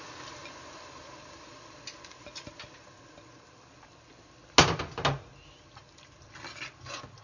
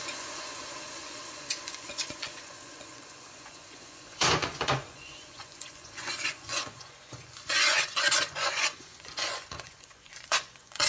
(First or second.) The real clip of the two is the first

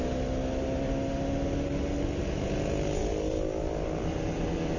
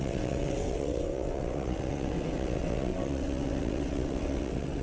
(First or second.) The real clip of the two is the first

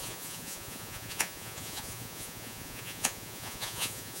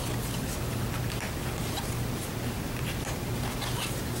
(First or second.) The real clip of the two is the second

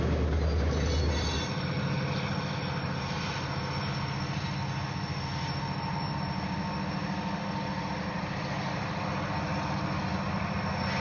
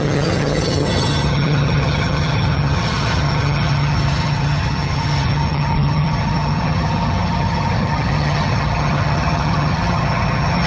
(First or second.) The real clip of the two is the first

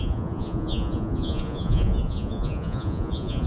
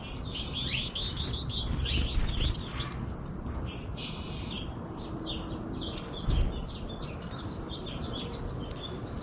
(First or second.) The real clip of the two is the second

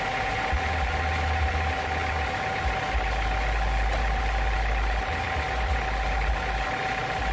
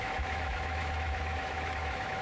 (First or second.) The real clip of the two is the first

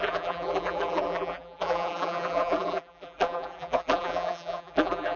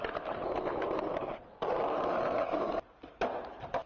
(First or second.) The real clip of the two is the second